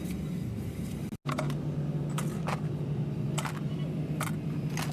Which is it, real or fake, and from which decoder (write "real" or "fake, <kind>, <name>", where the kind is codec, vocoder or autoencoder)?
real